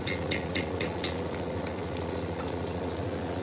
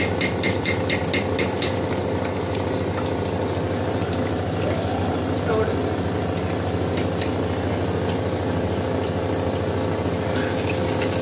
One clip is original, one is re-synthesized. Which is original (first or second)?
second